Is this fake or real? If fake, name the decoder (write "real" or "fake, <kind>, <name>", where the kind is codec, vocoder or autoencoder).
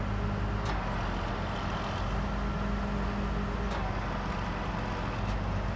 real